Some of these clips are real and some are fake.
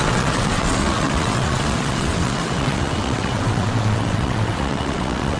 fake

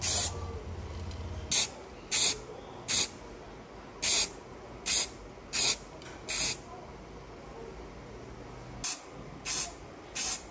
real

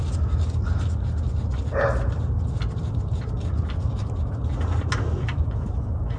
real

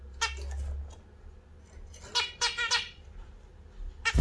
real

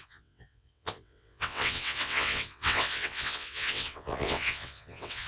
fake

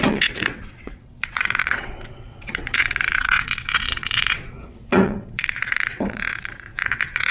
fake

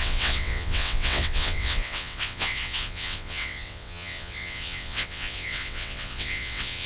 fake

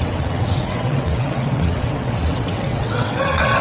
fake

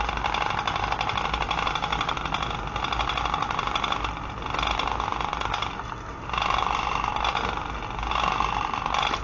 real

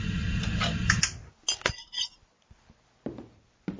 real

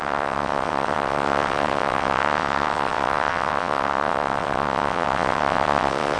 fake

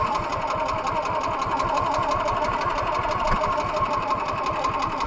real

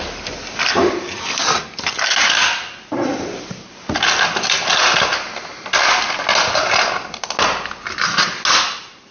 real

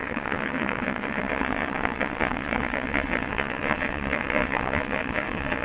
fake